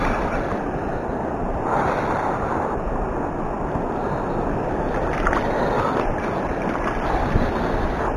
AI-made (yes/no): no